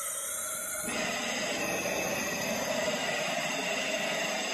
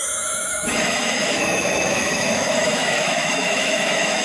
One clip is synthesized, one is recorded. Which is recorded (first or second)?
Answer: first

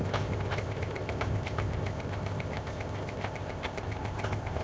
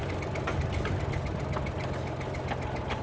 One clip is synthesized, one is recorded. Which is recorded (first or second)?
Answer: second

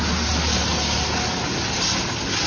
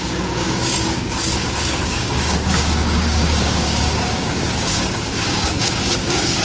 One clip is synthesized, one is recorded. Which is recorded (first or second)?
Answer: first